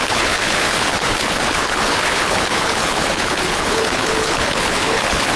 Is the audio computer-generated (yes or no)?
yes